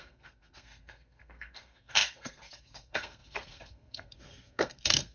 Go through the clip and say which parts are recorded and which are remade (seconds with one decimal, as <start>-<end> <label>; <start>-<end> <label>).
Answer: 0.0-5.1 remade